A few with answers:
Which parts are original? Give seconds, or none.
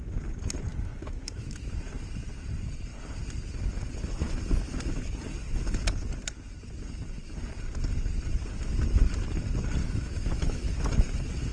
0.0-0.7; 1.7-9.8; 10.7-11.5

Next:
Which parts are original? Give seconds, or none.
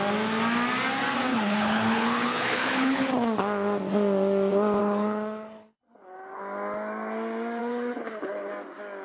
0.0-1.3; 3.1-4.8; 6.4-7.6; 8.5-9.0